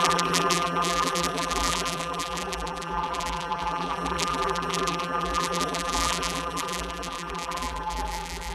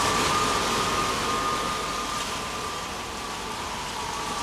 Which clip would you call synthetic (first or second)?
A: first